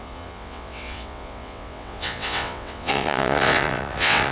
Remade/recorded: remade